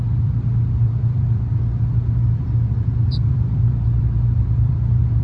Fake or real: fake